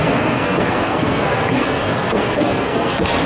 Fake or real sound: fake